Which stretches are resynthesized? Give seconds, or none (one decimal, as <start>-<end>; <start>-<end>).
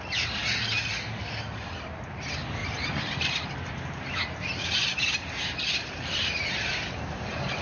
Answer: none